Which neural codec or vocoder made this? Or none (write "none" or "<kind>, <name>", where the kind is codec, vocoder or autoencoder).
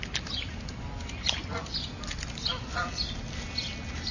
none